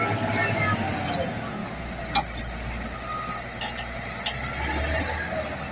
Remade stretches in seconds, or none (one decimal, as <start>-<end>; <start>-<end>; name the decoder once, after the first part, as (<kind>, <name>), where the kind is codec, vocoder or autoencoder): none